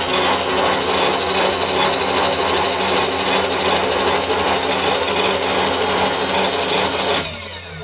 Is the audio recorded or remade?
recorded